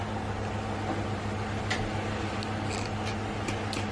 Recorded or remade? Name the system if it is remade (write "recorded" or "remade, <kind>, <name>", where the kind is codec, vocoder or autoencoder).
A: recorded